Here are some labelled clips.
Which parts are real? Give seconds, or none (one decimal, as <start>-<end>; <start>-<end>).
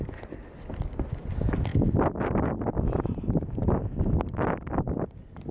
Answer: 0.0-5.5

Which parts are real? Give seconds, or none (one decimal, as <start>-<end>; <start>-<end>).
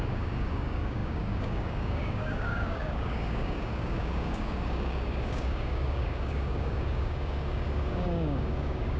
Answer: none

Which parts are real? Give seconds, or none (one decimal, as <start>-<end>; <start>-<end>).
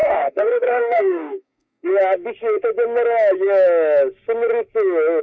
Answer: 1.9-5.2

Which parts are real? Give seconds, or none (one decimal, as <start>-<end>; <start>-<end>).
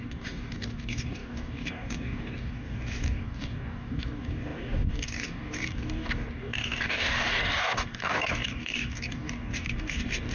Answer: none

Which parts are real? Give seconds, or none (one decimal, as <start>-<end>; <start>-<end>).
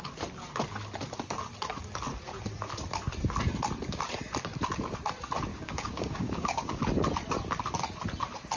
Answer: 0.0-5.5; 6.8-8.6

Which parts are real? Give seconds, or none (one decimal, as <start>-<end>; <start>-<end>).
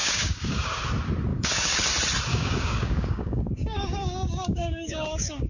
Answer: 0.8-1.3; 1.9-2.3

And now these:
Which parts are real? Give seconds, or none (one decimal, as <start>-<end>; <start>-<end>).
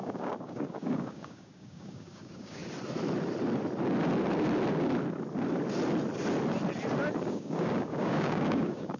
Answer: 2.6-7.3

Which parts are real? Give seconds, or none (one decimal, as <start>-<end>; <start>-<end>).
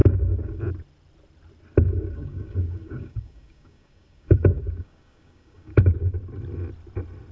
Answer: 0.6-1.8; 6.2-7.3